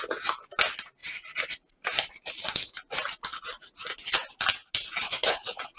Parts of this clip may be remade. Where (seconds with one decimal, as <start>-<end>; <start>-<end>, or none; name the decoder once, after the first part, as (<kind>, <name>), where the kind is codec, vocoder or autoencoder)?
1.0-2.1 (vocoder, BigVGAN v2)